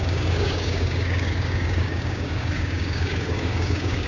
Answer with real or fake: fake